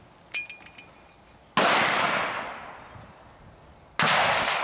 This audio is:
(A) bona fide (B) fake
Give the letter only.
A